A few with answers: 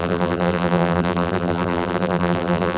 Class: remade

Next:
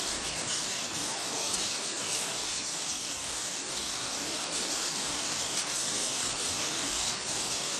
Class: remade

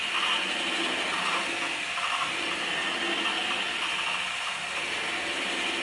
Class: recorded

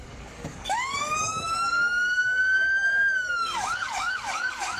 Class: remade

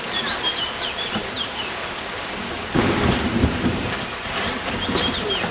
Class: recorded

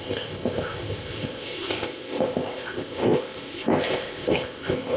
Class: remade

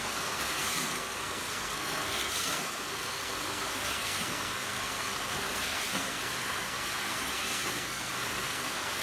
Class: remade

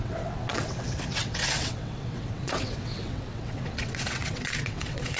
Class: remade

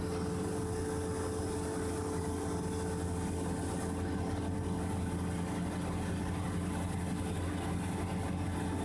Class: recorded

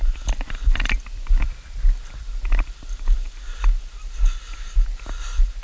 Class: recorded